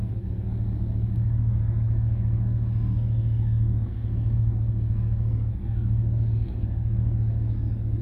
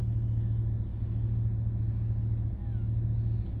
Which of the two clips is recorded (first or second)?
second